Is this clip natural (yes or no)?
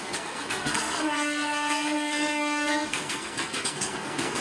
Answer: no